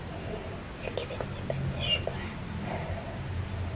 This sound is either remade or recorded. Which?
recorded